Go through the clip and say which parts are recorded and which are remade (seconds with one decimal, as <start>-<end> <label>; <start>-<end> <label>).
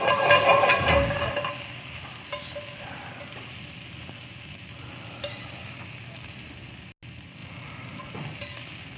0.0-9.0 recorded